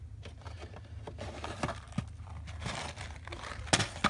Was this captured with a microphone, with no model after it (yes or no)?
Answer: yes